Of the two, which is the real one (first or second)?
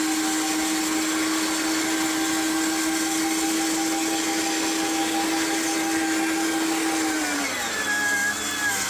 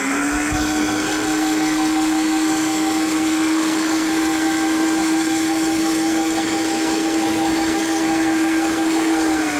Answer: first